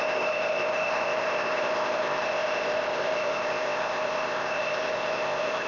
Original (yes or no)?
no